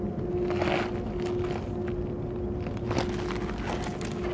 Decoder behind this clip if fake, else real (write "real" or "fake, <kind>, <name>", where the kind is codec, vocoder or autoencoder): real